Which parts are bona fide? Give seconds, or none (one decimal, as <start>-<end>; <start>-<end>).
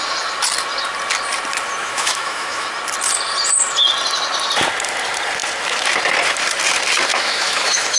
0.0-1.8; 2.7-7.1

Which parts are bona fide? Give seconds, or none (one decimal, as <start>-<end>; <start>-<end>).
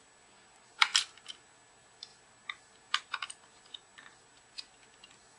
0.0-5.4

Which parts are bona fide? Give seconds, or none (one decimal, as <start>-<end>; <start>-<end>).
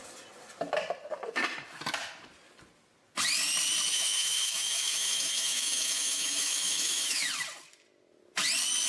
0.0-3.9; 7.3-8.9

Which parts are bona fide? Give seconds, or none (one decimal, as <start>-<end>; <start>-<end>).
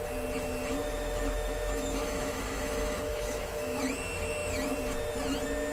0.0-0.8; 3.8-5.7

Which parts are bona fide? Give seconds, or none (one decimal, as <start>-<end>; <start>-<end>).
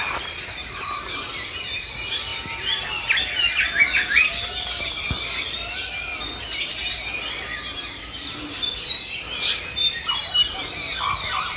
0.0-11.6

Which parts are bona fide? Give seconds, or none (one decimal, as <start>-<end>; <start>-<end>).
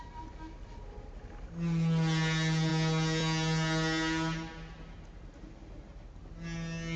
0.0-7.0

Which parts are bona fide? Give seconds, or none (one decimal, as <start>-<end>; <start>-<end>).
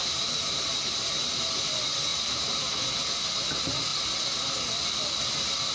0.0-5.7